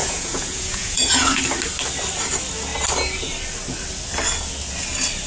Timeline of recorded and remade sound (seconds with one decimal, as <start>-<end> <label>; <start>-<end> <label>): 0.0-1.4 remade; 1.4-5.3 recorded

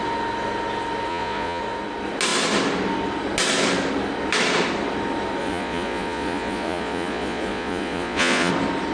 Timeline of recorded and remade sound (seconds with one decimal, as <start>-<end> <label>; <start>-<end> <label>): 0.0-1.1 recorded; 1.1-1.6 remade; 1.6-5.4 recorded; 5.4-8.5 remade; 8.5-8.9 recorded

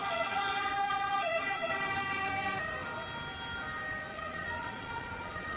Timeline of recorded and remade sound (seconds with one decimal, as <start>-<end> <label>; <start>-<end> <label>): 0.0-1.7 remade; 1.7-4.1 recorded; 4.1-5.6 remade

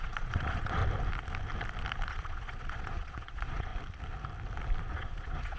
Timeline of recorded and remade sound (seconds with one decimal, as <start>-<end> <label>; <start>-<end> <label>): 0.0-0.8 remade; 0.8-2.1 recorded; 2.1-3.7 remade; 3.7-4.9 recorded; 4.9-5.6 remade

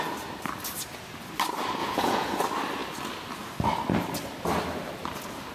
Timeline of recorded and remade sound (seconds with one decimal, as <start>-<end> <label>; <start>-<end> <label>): 0.0-1.8 recorded; 1.8-2.4 remade; 2.4-5.5 recorded